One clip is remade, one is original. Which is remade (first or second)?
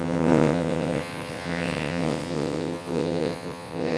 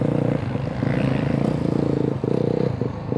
first